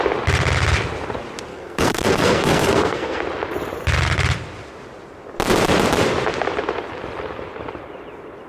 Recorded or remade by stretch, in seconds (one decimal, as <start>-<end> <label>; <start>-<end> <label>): 0.0-1.5 recorded; 1.5-3.2 remade; 3.2-8.5 recorded